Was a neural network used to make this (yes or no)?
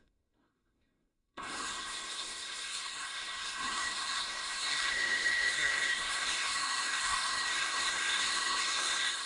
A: yes